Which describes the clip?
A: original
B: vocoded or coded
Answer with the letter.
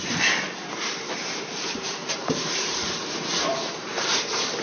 B